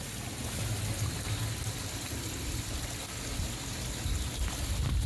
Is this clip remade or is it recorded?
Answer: recorded